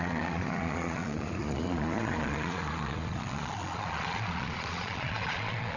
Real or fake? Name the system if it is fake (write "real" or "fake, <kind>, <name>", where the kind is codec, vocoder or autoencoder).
fake, vocoder, Vocos